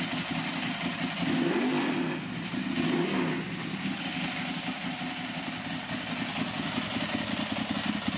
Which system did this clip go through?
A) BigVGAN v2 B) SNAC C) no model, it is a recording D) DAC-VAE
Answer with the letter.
C